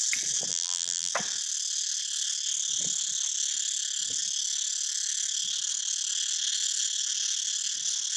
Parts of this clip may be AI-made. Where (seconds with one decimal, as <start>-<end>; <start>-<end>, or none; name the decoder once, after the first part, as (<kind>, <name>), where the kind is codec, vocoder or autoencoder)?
0.5-1.1 (vocoder, BigVGAN v2)